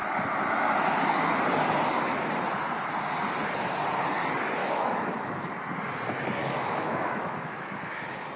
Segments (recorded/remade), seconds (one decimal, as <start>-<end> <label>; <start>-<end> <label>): 0.0-4.6 recorded; 4.6-5.5 remade; 5.5-6.4 recorded; 6.4-8.0 remade; 8.0-8.4 recorded

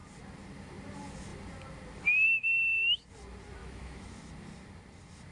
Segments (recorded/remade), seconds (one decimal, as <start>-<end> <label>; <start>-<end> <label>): 0.0-3.6 recorded; 3.6-4.3 remade; 4.3-5.3 recorded

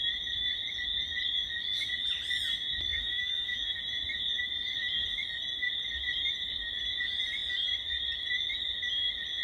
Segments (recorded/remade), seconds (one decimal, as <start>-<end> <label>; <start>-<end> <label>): 0.0-2.9 recorded; 2.9-3.8 remade; 3.8-9.4 recorded

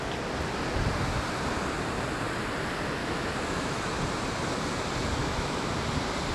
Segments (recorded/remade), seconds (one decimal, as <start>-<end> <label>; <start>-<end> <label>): 0.0-3.0 recorded; 3.0-3.9 remade; 3.9-5.2 recorded; 5.2-5.7 remade; 5.7-6.3 recorded

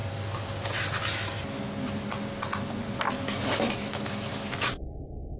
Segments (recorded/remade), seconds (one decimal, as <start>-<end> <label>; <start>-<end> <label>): 0.0-3.2 recorded; 3.2-4.3 remade; 4.3-5.0 recorded; 5.0-5.4 remade

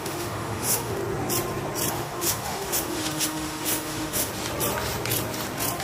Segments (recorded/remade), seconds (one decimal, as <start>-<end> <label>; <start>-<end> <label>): 0.0-1.0 remade; 1.0-1.9 recorded; 1.9-4.3 remade; 4.3-5.8 recorded